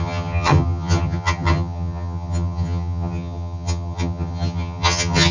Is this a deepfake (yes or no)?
yes